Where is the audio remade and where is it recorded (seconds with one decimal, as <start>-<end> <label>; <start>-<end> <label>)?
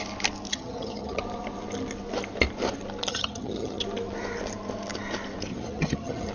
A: 0.0-0.5 recorded; 0.5-1.2 remade; 1.2-3.1 recorded; 3.1-3.8 remade; 3.8-5.5 recorded; 5.5-6.3 remade